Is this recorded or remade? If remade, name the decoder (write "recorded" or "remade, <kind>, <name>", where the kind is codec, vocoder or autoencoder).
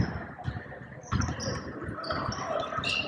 recorded